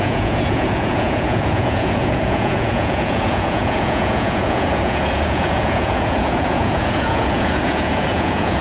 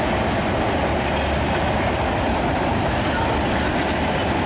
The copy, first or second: first